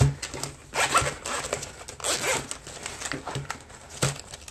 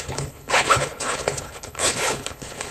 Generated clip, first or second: second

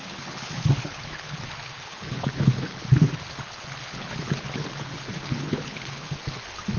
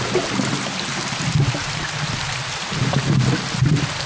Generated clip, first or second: first